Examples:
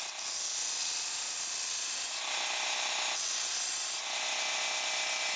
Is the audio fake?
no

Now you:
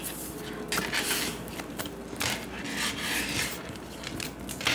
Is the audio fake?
no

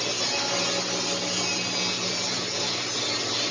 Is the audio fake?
no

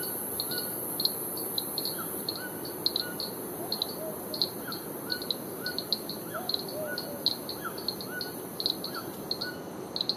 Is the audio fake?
no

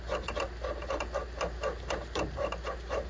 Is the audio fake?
no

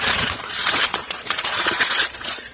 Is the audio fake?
yes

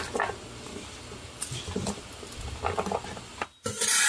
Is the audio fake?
no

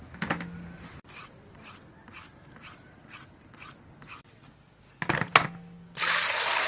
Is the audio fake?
no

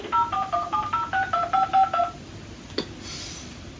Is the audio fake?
no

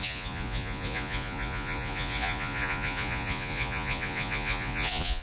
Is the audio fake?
yes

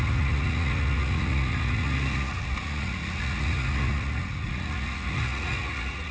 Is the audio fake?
yes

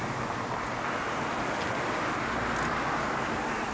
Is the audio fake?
no